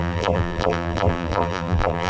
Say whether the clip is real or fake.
fake